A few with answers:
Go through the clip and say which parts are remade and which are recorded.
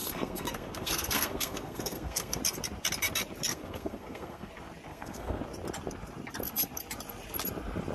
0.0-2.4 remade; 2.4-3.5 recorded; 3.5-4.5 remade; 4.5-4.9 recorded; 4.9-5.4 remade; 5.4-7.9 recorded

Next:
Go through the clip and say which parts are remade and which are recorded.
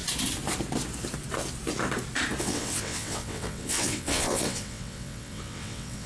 0.0-2.4 recorded; 2.4-6.1 remade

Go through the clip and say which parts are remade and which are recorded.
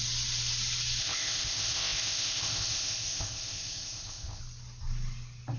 0.0-1.0 recorded; 1.0-4.4 remade; 4.4-5.6 recorded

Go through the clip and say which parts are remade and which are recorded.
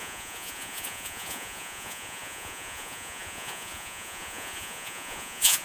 0.0-5.6 remade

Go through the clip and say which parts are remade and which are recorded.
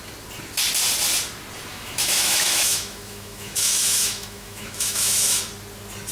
0.0-1.7 recorded; 1.7-5.4 remade; 5.4-6.1 recorded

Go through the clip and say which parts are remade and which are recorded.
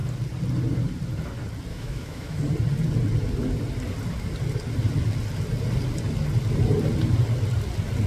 0.0-1.7 recorded; 1.7-2.4 remade; 2.4-8.1 recorded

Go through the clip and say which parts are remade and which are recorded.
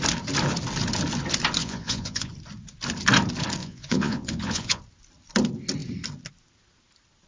0.0-1.6 recorded; 1.6-2.3 remade; 2.3-3.6 recorded; 3.6-4.8 remade; 4.8-7.3 recorded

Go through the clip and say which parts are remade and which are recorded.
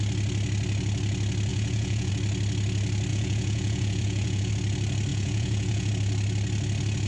0.0-1.5 recorded; 1.5-2.1 remade; 2.1-3.1 recorded; 3.1-4.5 remade; 4.5-5.1 recorded; 5.1-5.9 remade; 5.9-7.1 recorded